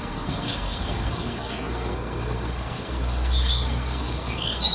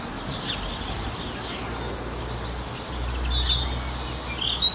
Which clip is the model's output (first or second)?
first